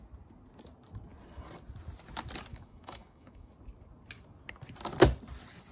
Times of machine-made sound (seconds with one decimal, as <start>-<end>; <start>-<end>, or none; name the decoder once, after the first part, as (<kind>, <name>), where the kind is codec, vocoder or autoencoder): 2.5-3.5 (autoencoder, DAC-VAE)